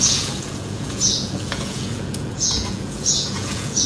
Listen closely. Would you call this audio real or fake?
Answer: fake